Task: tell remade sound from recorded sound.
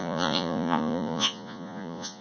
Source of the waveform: remade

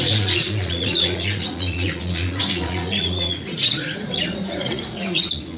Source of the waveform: remade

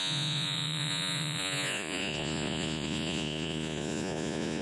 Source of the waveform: remade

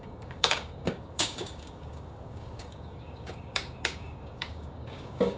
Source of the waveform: remade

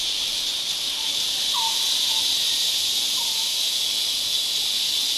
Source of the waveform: recorded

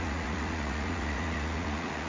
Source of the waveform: remade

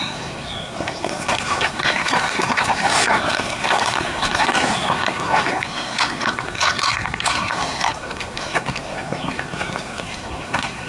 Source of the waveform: remade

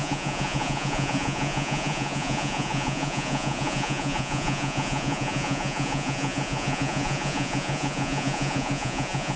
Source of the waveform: remade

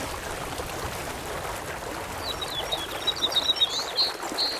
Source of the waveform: recorded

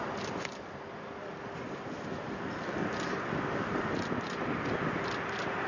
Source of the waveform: recorded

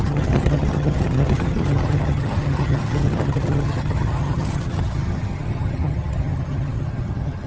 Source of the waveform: remade